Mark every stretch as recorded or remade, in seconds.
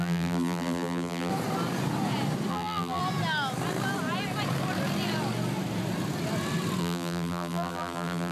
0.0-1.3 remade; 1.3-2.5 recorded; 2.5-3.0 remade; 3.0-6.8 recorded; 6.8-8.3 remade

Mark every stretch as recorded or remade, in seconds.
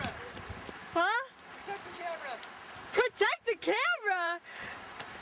0.0-0.8 remade; 0.8-3.4 recorded; 3.4-5.2 remade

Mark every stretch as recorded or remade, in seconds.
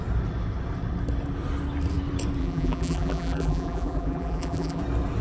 0.0-2.4 recorded; 2.4-4.8 remade; 4.8-5.2 recorded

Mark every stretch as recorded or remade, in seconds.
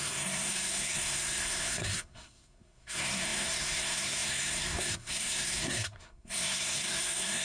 0.0-7.4 remade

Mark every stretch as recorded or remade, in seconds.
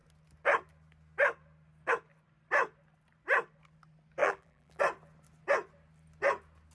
0.0-4.2 recorded; 4.2-4.8 remade; 4.8-6.7 recorded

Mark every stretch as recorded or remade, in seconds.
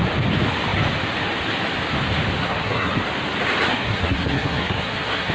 0.0-2.4 recorded; 2.4-2.9 remade; 2.9-3.7 recorded; 3.7-5.3 remade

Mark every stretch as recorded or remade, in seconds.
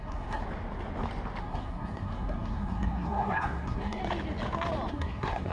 0.0-0.4 remade; 0.4-1.4 recorded; 1.4-4.0 remade; 4.0-4.9 recorded; 4.9-5.5 remade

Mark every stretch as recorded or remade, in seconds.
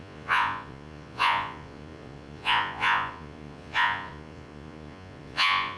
0.0-5.8 remade